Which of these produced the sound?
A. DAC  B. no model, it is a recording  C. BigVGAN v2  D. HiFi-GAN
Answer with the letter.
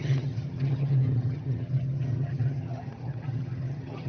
D